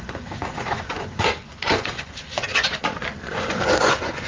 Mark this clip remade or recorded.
remade